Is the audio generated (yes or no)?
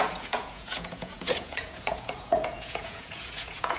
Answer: yes